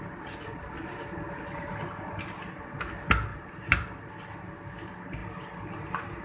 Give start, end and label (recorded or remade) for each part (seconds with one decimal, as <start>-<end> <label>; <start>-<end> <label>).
0.0-3.3 recorded; 3.3-4.1 remade; 4.1-6.2 recorded